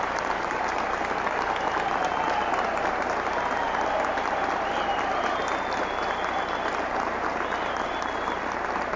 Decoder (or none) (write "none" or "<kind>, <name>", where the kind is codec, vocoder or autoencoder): none